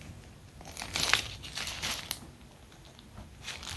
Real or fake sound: real